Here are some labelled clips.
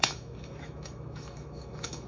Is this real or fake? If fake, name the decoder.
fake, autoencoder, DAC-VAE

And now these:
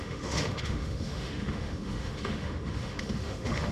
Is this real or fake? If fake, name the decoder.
fake, autoencoder, DAC-VAE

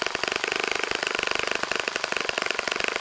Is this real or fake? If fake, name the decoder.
real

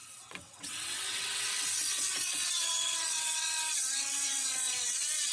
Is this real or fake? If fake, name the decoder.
fake, vocoder, WaveNeXt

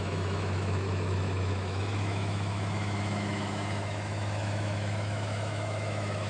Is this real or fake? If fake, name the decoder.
fake, autoencoder, DAC-VAE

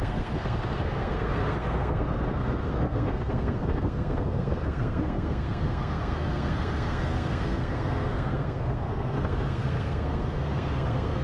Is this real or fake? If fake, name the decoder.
fake, codec, SNAC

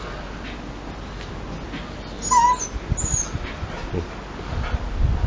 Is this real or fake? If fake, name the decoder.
real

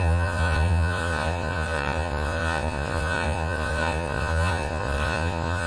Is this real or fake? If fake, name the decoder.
fake, vocoder, Vocos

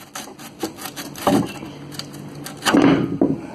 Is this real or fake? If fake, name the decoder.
real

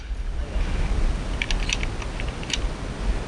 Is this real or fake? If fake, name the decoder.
real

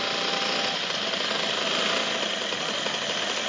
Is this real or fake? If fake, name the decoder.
real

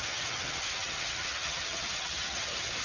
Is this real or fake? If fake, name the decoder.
fake, vocoder, HiFi-GAN